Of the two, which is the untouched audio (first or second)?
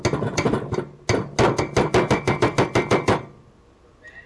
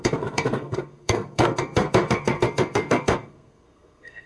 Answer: first